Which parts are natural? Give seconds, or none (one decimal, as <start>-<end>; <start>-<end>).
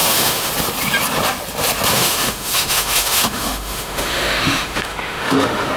0.5-1.9